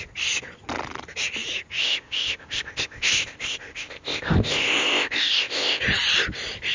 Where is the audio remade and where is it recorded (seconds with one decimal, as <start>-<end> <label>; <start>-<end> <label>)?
0.0-1.8 recorded; 1.8-5.8 remade; 5.8-6.7 recorded